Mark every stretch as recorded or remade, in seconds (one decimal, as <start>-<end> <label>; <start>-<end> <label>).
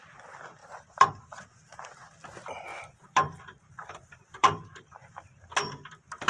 0.0-0.6 recorded; 0.6-1.8 remade; 1.8-2.7 recorded; 2.7-5.4 remade; 5.4-6.3 recorded